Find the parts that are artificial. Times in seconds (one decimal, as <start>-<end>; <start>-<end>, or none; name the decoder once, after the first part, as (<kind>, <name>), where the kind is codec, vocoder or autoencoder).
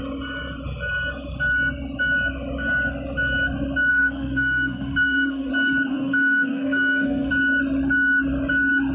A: 3.9-5.5 (codec, SNAC); 5.9-7.3